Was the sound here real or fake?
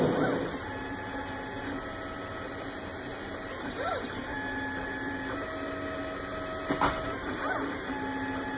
real